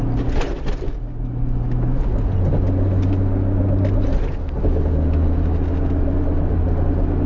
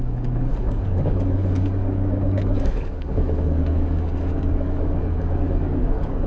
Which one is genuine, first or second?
first